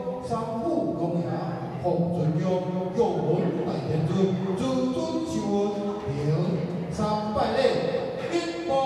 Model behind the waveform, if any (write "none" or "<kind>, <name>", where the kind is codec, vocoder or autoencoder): none